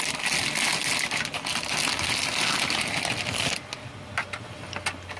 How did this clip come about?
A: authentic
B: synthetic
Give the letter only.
A